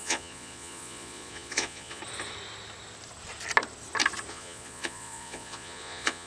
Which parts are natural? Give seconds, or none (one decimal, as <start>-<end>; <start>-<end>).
2.0-4.3